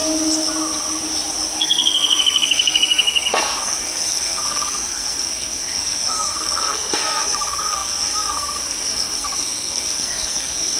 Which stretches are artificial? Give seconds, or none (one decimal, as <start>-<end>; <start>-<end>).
1.6-10.8